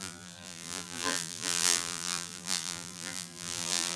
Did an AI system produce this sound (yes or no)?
yes